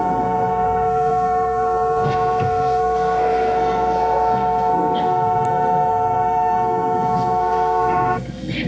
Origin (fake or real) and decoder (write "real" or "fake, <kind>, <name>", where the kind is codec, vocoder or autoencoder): fake, codec, SNAC